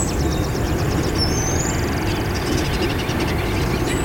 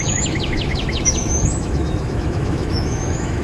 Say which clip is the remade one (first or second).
second